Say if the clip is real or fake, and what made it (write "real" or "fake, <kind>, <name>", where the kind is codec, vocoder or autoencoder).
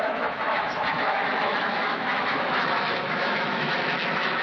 fake, autoencoder, DAC-VAE